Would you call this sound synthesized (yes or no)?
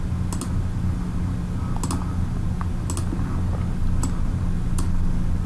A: no